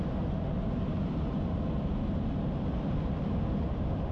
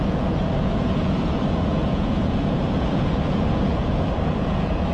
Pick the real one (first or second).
first